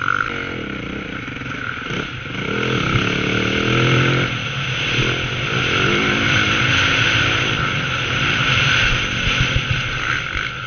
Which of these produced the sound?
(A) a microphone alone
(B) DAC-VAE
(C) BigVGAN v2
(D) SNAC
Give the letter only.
A